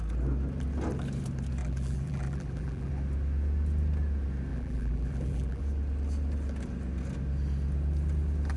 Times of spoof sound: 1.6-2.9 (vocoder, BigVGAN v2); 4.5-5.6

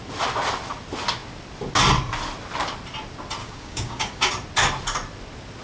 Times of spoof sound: 3.4-4.3 (codec, DAC)

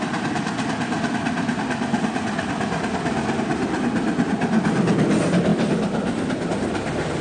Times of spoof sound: none

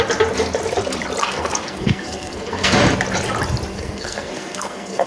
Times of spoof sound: 1.2-2.7 (codec, SNAC); 3.7-5.1

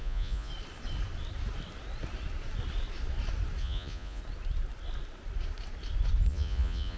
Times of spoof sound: 0.0-0.5 (vocoder, Vocos); 3.6-4.2; 6.3-7.0

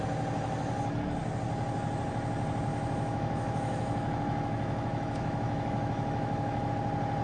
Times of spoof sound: 2.7-6.7 (autoencoder, DAC-VAE)

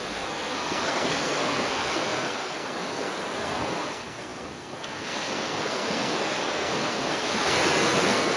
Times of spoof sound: 0.0-8.4 (codec, SNAC)

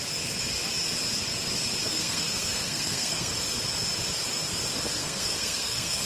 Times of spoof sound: 1.8-3.3 (codec, SNAC); 5.0-6.1